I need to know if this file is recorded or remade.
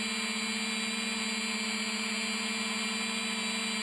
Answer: recorded